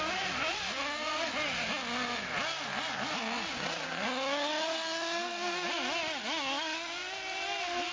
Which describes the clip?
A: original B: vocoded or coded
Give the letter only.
A